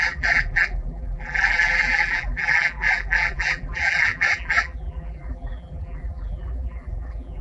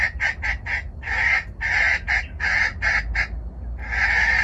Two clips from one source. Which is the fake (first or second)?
first